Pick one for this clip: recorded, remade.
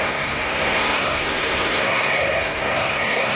remade